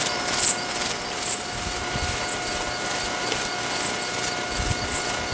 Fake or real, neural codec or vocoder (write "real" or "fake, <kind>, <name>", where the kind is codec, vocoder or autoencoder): real